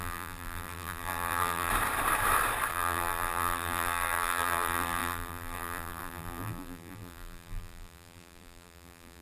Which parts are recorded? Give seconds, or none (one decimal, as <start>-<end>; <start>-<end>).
1.7-2.7